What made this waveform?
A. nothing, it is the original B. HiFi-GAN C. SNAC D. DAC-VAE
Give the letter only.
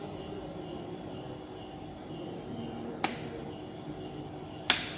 A